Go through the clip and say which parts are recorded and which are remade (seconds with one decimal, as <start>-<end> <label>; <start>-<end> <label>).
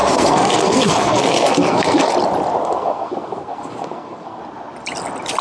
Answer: 0.0-2.1 remade; 2.1-2.6 recorded; 2.6-4.4 remade; 4.4-5.4 recorded